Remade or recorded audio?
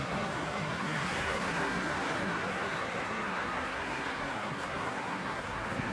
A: remade